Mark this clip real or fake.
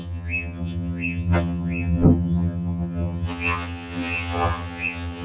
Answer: fake